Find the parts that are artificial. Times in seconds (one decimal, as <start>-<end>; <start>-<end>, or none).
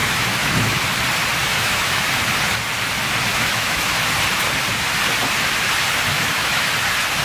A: 0.0-0.8; 1.4-2.0; 3.3-3.9; 6.1-6.7